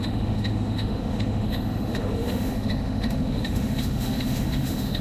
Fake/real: fake